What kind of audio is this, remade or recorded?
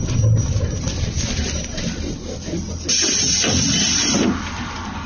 recorded